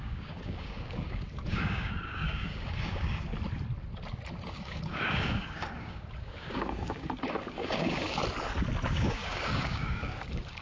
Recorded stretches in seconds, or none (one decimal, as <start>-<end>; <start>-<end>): 3.3-4.3; 8.2-8.9